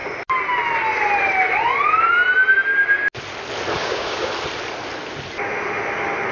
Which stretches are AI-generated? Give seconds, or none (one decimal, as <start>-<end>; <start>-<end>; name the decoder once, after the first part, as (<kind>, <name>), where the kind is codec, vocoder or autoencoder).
3.8-4.3 (codec, DAC)